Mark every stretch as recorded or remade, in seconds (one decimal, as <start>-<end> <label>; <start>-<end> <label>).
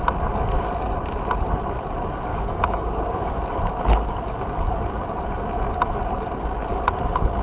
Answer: 0.0-2.3 recorded; 2.3-3.4 remade; 3.4-7.4 recorded